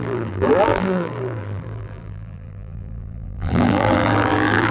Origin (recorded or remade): remade